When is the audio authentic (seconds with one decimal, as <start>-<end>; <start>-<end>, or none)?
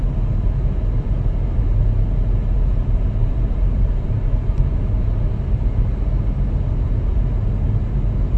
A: 0.0-3.2; 4.6-8.4